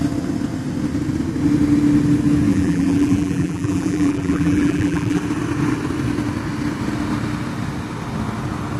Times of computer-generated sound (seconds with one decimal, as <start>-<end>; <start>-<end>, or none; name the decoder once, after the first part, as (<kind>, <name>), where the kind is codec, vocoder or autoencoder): 2.5-5.2 (vocoder, BigVGAN v2)

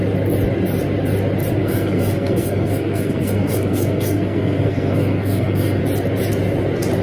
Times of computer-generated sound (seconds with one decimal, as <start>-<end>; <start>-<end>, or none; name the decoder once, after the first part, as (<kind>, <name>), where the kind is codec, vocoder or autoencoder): 1.6-5.8 (codec, SNAC)

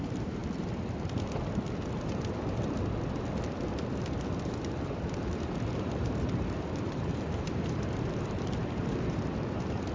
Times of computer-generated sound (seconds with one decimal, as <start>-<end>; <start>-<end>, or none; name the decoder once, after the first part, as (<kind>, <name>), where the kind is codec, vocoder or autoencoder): 0.0-0.4 (vocoder, BigVGAN v2); 4.6-9.9

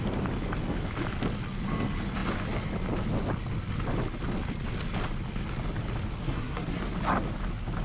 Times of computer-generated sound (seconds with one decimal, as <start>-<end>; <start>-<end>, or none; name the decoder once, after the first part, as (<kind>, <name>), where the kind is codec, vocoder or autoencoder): 6.2-6.8 (codec, SNAC)

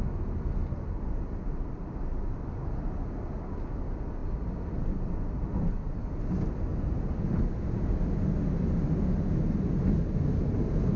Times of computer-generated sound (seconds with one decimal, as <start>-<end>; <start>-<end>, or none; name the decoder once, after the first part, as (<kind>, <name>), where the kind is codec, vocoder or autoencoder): none

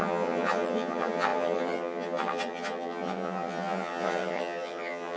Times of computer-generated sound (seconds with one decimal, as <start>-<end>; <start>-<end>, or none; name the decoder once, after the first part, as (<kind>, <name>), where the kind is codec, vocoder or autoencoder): 0.0-5.2 (vocoder, HiFi-GAN)

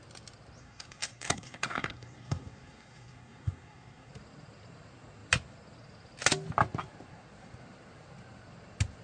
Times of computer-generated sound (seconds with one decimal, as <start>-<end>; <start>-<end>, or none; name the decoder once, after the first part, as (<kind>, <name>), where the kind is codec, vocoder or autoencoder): 0.6-4.1 (codec, SNAC)